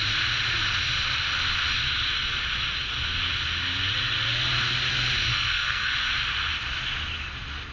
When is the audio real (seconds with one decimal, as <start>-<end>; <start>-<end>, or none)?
0.0-5.3; 5.9-7.7